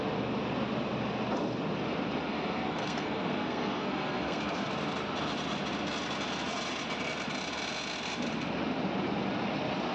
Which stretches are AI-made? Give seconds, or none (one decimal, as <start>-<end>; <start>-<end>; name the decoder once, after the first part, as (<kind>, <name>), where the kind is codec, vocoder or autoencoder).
2.3-4.7 (codec, SNAC)